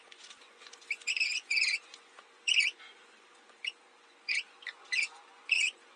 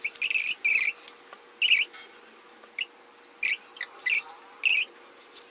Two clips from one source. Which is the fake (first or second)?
first